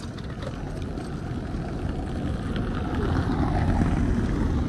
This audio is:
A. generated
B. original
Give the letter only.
B